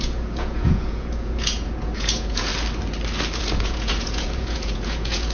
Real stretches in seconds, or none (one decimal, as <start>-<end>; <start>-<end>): 2.5-3.4